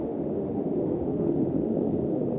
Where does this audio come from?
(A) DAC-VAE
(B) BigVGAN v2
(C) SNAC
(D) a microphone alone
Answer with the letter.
A